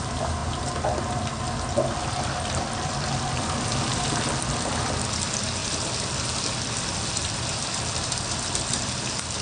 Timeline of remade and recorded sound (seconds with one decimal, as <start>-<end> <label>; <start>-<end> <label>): 0.0-0.4 remade; 0.4-2.5 recorded; 2.5-9.4 remade